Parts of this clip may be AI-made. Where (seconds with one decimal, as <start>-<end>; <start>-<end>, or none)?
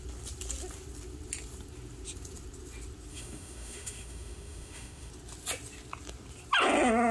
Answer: 3.1-5.1